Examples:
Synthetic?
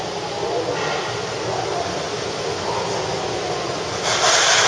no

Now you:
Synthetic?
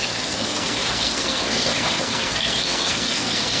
yes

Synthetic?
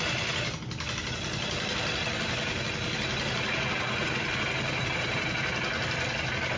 no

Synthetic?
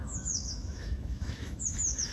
yes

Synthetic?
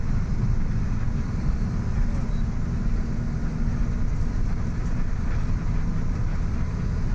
no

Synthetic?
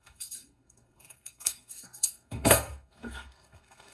yes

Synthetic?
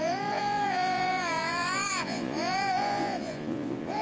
yes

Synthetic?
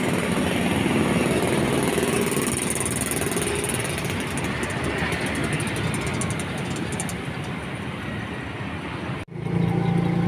no